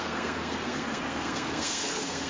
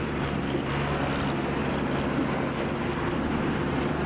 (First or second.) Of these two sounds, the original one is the second